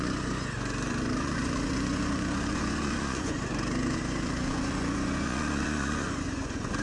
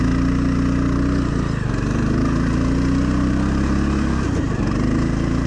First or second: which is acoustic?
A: second